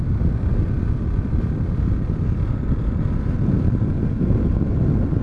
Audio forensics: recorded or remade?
recorded